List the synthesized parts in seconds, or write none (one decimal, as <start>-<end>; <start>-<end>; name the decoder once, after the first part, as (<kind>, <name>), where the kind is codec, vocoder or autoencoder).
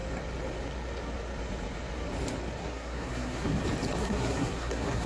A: 2.6-3.6 (codec, SNAC); 4.0-5.1